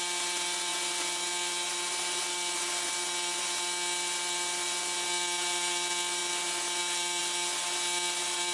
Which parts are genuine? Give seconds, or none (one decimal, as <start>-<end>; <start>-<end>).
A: 0.0-8.5